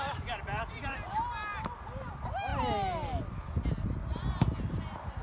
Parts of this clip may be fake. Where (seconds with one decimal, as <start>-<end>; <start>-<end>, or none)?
none